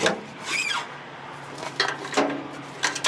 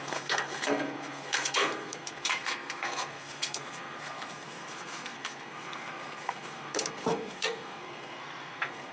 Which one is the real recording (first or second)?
first